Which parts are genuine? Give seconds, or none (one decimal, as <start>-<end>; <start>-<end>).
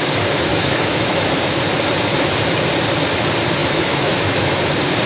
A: 0.0-0.5; 1.3-3.6; 4.6-5.1